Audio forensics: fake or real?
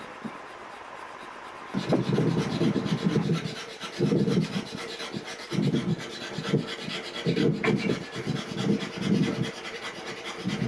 real